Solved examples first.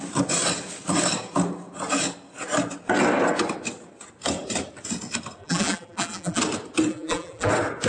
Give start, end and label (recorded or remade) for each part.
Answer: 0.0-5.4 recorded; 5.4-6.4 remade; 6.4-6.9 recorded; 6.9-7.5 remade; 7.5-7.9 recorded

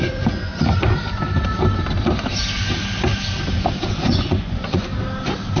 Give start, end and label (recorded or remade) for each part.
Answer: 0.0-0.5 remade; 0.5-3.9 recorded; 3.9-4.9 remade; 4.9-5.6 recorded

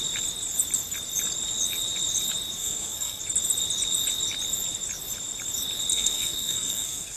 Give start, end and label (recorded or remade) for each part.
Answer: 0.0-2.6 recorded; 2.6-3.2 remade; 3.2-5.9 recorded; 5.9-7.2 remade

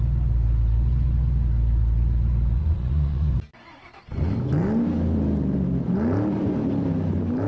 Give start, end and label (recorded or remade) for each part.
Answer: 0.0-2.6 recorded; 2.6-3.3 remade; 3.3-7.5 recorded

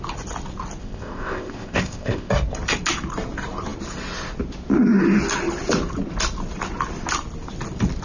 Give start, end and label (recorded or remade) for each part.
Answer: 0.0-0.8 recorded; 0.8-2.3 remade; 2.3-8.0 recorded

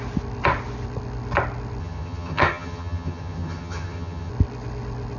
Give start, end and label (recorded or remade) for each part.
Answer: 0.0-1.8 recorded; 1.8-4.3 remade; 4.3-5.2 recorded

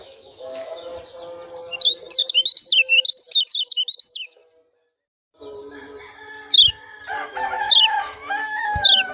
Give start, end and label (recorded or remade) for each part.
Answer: 0.0-0.9 remade; 0.9-2.2 recorded; 2.2-4.4 remade; 4.4-7.2 recorded; 7.2-9.1 remade